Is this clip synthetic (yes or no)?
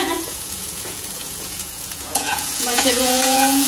yes